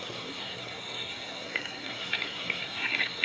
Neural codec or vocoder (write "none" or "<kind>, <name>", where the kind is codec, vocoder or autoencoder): codec, SNAC